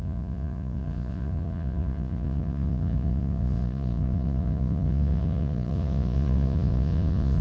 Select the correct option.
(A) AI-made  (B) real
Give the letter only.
A